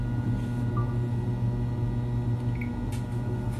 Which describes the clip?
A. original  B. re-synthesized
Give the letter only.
A